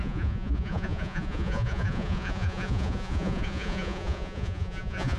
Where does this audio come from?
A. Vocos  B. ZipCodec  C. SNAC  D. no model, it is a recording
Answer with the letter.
A